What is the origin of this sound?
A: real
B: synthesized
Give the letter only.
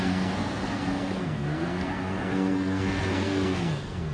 B